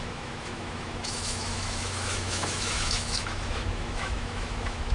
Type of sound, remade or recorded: remade